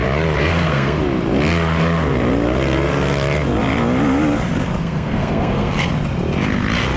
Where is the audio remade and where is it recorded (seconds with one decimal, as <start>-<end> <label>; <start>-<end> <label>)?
0.0-0.5 recorded; 0.5-1.0 remade; 1.0-4.8 recorded; 4.8-5.9 remade; 5.9-7.0 recorded